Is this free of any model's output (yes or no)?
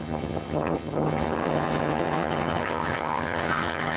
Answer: no